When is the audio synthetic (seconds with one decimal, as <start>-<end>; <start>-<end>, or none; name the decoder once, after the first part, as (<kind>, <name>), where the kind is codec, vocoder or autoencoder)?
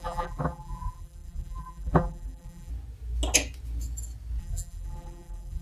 0.0-2.7 (vocoder, BigVGAN v2); 4.4-5.6